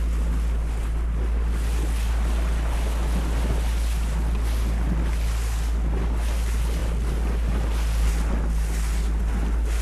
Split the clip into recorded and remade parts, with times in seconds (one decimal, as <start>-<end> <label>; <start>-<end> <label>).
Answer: 0.0-9.8 recorded